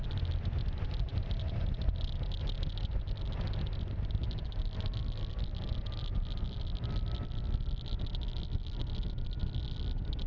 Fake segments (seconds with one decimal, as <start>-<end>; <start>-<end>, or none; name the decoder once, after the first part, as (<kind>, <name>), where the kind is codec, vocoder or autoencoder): none